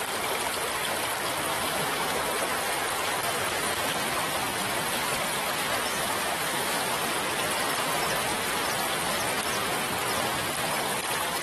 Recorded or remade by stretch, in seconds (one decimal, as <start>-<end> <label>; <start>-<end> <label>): 0.0-1.5 recorded; 1.5-2.3 remade; 2.3-5.9 recorded; 5.9-6.9 remade; 6.9-11.4 recorded